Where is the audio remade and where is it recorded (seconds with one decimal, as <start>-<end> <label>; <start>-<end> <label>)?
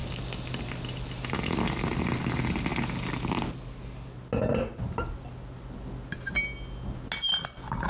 0.0-7.9 recorded